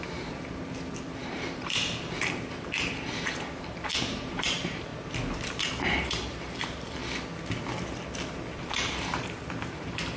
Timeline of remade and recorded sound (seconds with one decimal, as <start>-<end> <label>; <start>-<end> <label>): 0.0-4.9 remade; 4.9-5.5 recorded; 5.5-7.0 remade; 7.0-8.5 recorded; 8.5-10.2 remade